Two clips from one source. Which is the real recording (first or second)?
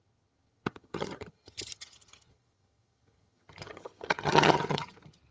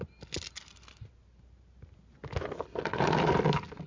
second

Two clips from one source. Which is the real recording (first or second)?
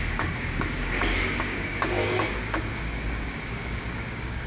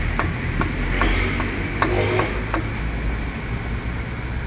second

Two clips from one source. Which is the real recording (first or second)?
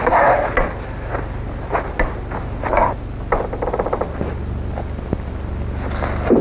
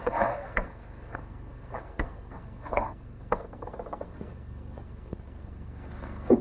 first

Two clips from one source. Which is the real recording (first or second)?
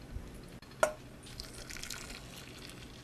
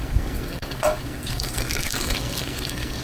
first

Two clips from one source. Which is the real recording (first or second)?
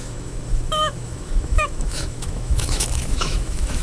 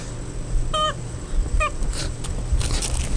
second